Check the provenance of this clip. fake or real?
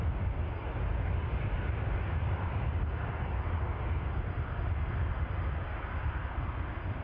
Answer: real